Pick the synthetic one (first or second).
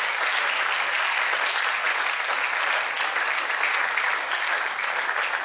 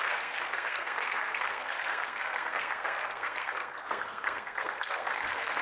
second